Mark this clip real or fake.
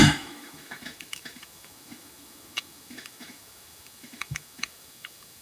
fake